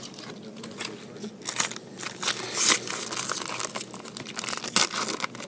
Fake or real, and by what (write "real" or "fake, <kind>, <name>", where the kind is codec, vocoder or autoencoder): real